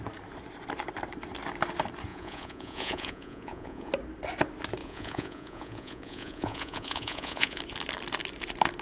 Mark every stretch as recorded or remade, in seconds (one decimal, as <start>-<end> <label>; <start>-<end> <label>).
0.0-2.1 recorded; 2.1-3.9 remade; 3.9-4.8 recorded; 4.8-7.6 remade; 7.6-8.8 recorded